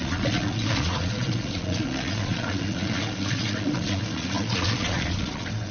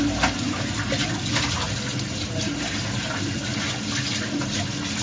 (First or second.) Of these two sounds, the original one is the second